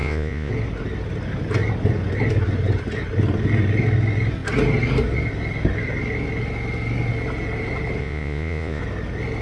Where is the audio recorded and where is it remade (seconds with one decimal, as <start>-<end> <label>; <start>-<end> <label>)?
0.0-0.5 remade; 0.5-8.0 recorded; 8.0-8.8 remade; 8.8-9.4 recorded